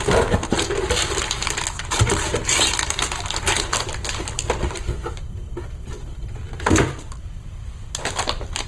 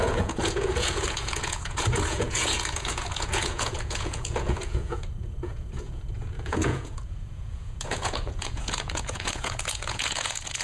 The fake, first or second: second